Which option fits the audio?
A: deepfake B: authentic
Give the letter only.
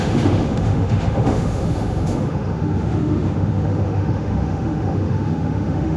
A